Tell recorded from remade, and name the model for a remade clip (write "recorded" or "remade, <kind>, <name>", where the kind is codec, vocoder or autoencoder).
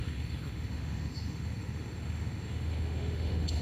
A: remade, autoencoder, DAC-VAE